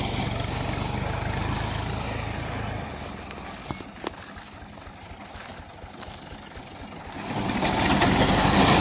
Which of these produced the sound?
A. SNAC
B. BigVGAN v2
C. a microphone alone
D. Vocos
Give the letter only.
C